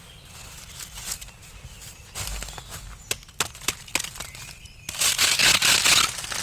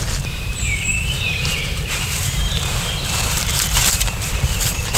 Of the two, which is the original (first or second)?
first